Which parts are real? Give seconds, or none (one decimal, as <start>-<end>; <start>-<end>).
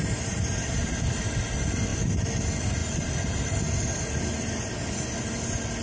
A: 0.0-5.8